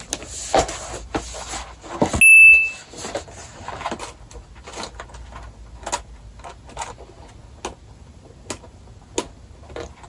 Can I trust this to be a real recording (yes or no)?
yes